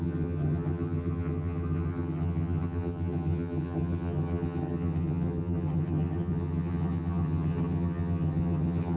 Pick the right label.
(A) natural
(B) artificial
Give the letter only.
B